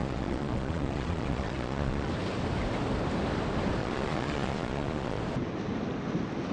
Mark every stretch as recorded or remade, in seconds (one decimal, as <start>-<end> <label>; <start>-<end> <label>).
0.0-2.1 remade; 2.1-3.8 recorded; 3.8-5.2 remade; 5.2-6.5 recorded